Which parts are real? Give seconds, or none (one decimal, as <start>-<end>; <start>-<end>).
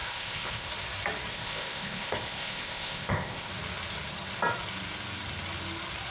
0.7-1.3; 3.5-6.1